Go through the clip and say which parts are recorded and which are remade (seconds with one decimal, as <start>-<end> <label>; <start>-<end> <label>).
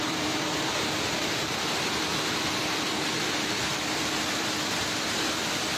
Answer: 0.0-2.1 remade; 2.1-3.7 recorded; 3.7-5.8 remade